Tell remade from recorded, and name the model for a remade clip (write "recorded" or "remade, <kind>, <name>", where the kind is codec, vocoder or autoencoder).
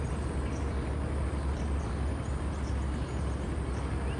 recorded